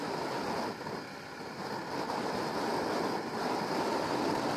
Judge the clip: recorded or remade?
recorded